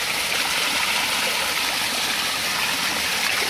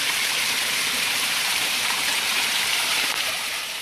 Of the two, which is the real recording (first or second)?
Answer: first